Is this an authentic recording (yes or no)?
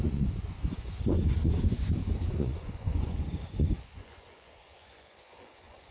no